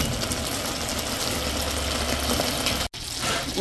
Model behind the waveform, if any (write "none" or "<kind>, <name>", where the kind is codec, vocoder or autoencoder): none